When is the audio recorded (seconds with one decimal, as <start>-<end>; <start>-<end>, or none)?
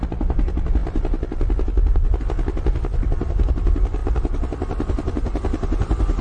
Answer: 0.0-6.2